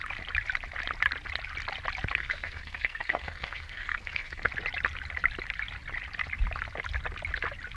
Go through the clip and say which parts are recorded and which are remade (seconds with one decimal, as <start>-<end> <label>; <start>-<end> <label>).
0.0-2.2 recorded; 2.2-4.5 remade; 4.5-7.8 recorded